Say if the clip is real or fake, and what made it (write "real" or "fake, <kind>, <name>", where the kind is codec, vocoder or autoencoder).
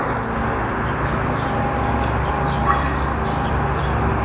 real